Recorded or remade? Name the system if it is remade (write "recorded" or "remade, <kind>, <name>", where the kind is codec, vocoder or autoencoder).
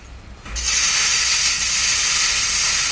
recorded